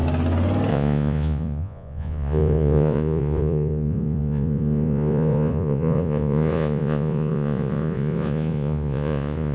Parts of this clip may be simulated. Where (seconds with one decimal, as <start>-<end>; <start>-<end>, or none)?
0.7-9.5